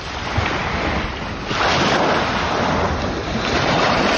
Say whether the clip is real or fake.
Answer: real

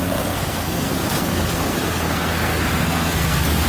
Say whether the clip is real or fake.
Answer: fake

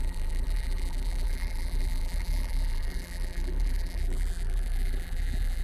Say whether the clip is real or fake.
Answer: fake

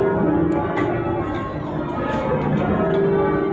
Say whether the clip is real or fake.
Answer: real